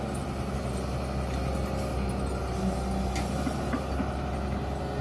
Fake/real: real